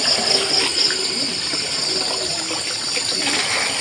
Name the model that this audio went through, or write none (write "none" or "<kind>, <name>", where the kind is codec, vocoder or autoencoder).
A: none